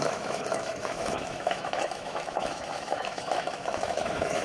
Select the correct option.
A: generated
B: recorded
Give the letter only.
A